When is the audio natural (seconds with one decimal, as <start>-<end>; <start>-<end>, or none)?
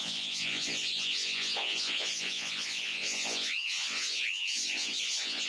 none